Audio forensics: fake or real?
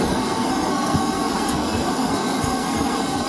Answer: fake